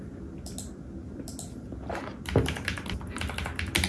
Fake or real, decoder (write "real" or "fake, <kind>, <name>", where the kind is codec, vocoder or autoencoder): real